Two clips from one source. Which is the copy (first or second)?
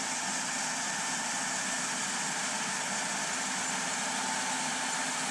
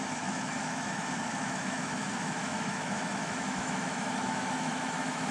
second